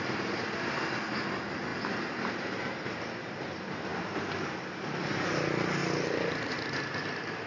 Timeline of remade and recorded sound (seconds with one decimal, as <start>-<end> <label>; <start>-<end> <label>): 0.0-7.5 recorded